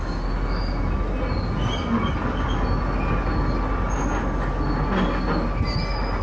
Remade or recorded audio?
recorded